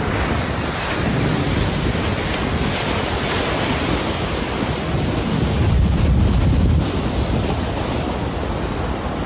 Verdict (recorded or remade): recorded